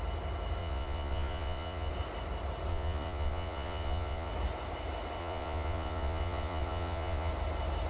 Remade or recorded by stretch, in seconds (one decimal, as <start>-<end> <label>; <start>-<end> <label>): 0.0-0.6 recorded; 0.6-1.9 remade; 1.9-2.7 recorded; 2.7-4.3 remade; 4.3-5.2 recorded; 5.2-7.3 remade; 7.3-7.9 recorded